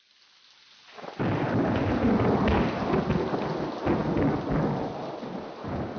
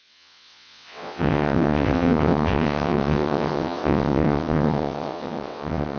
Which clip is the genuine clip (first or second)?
first